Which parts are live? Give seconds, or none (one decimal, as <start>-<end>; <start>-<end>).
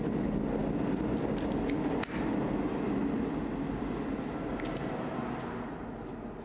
0.0-6.4